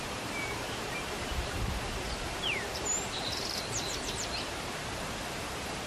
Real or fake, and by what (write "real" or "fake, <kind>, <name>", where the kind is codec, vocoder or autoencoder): fake, vocoder, BigVGAN v2